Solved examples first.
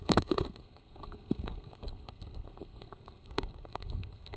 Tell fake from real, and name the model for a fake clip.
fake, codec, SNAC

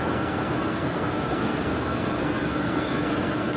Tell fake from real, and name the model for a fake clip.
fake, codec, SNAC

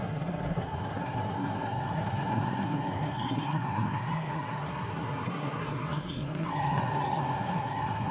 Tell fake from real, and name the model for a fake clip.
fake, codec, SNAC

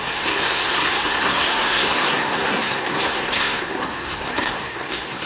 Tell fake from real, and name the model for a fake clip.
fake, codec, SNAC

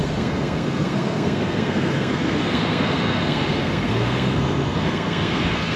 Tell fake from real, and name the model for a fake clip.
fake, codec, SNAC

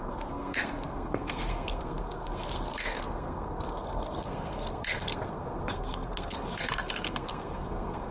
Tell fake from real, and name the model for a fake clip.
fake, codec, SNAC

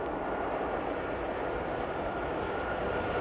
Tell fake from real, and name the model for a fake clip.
real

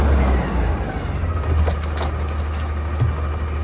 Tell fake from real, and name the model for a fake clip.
real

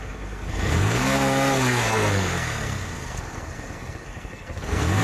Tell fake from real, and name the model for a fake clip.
fake, codec, SNAC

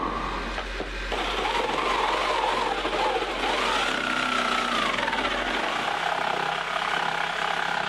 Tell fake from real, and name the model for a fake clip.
real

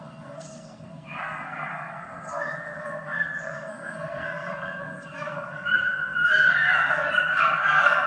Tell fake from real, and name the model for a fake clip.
fake, codec, SNAC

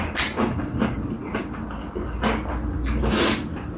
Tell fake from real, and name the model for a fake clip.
real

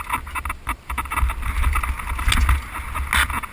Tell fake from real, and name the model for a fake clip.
real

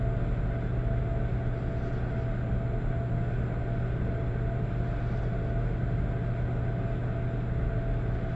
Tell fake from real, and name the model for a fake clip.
real